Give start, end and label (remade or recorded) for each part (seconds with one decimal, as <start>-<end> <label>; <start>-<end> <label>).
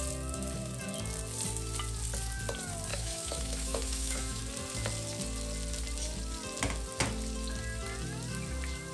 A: 0.0-2.9 recorded; 2.9-4.4 remade; 4.4-8.9 recorded